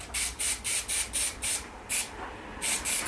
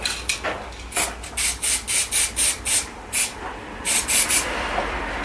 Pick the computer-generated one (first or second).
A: first